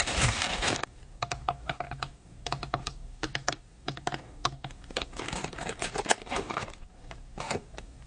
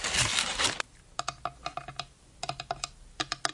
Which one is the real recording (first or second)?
second